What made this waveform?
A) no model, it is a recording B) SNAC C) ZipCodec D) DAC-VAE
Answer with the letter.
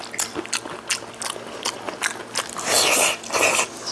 A